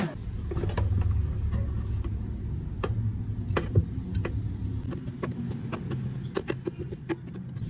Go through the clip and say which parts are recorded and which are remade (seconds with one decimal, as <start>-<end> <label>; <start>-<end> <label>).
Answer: 0.0-7.7 recorded